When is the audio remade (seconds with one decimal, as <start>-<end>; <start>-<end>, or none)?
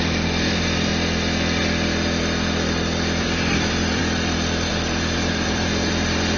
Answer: 0.0-0.9; 3.2-4.0; 4.7-6.4